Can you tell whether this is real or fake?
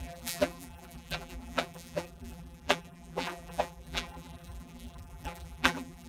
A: fake